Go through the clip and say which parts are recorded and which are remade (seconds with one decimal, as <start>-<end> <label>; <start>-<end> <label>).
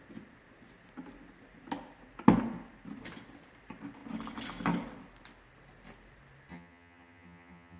0.0-6.5 recorded; 6.5-7.8 remade